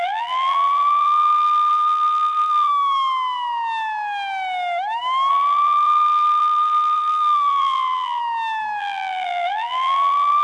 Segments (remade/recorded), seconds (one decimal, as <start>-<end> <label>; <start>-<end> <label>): 0.0-2.7 remade; 2.7-5.3 recorded; 5.3-8.2 remade; 8.2-8.8 recorded; 8.8-10.4 remade

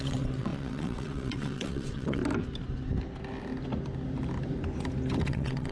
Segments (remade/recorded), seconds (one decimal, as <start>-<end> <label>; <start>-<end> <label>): 0.0-2.2 remade; 2.2-5.2 recorded; 5.2-5.7 remade